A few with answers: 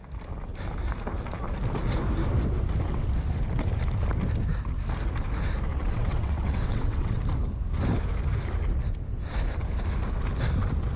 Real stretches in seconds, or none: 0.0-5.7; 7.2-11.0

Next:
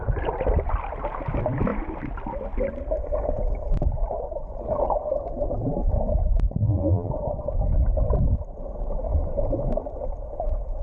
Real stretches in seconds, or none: 0.0-6.6; 7.1-10.8

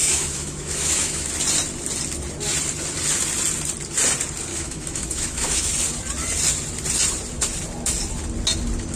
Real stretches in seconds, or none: 1.3-4.5; 5.7-9.0